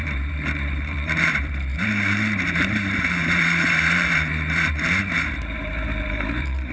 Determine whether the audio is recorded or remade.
remade